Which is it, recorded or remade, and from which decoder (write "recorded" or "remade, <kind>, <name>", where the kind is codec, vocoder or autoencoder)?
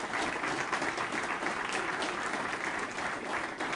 recorded